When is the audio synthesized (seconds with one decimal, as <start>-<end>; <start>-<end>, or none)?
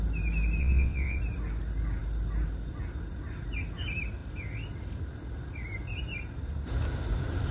0.6-1.2